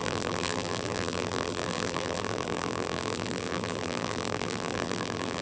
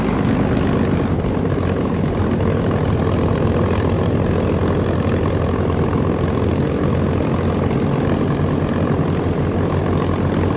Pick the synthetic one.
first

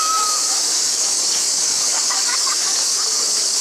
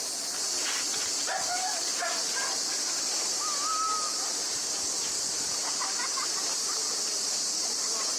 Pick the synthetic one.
first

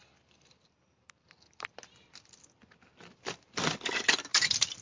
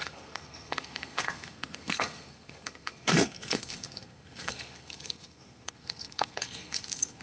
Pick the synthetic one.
second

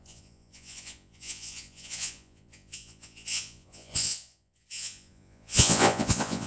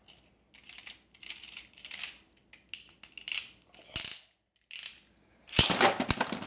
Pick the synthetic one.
first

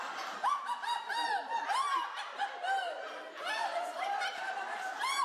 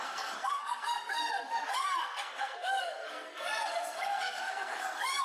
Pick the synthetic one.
second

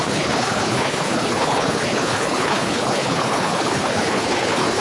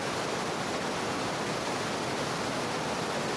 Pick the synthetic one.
first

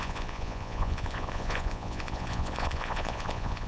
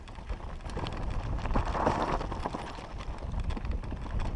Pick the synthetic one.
first